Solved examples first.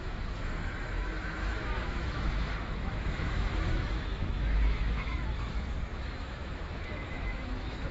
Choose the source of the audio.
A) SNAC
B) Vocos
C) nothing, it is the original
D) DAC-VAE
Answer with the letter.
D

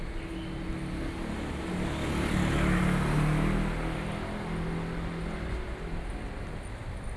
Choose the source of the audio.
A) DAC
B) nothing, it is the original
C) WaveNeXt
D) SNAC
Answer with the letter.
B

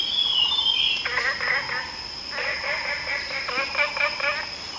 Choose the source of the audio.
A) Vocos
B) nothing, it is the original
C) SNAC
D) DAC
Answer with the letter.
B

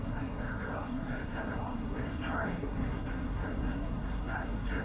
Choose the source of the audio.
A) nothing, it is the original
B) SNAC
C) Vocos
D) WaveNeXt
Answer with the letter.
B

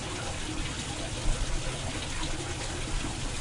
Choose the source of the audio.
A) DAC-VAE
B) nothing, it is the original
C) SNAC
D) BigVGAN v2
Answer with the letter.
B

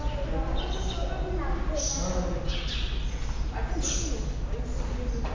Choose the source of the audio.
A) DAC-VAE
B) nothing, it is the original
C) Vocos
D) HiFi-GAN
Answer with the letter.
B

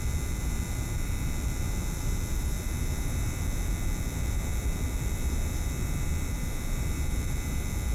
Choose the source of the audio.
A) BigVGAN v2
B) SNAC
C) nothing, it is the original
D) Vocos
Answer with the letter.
A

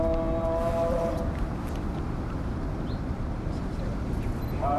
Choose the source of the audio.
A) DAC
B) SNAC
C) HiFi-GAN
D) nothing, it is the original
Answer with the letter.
D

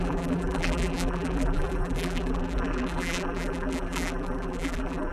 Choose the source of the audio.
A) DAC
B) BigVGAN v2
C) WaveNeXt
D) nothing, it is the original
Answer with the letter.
B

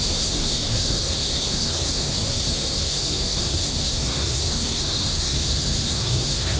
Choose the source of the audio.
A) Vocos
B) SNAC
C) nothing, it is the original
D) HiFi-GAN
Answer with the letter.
B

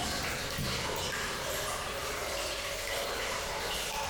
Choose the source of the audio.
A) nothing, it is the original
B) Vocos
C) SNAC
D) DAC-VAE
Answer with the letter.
A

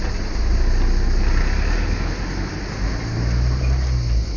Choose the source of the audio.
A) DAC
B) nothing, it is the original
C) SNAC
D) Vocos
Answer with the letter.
B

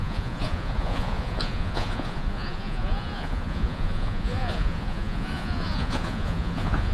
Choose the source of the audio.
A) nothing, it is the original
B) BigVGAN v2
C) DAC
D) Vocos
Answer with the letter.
D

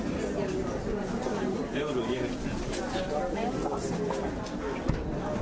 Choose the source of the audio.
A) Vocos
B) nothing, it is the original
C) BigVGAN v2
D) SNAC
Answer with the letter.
B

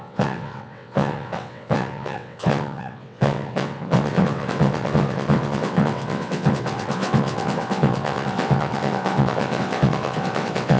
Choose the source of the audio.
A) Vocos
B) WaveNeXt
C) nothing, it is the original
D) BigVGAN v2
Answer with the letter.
B